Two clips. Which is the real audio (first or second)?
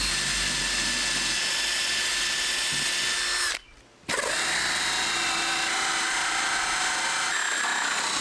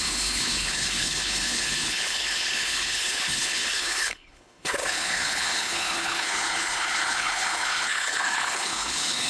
first